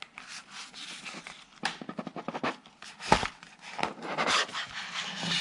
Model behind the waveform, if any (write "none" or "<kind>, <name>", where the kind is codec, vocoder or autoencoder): none